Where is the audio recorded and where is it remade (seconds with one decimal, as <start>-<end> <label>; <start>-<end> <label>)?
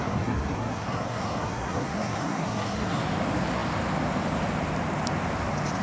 0.0-3.0 remade; 3.0-5.8 recorded